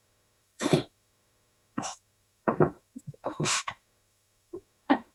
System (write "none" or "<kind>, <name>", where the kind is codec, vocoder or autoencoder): autoencoder, DAC-VAE